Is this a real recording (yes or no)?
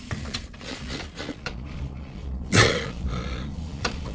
no